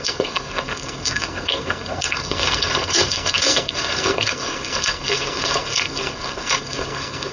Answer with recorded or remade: remade